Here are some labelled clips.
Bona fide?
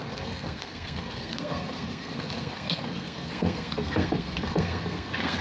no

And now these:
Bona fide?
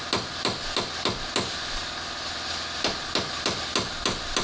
yes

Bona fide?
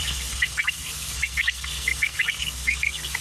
no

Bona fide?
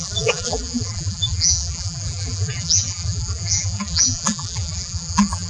no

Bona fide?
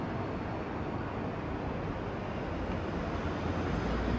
yes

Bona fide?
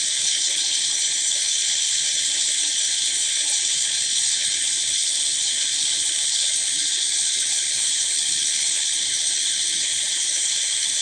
no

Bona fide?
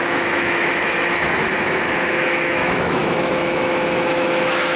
no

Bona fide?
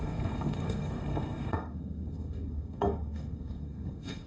no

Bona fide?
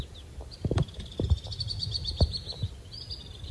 yes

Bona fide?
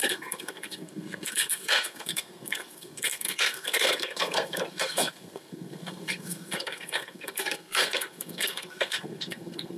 no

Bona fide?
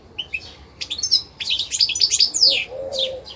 yes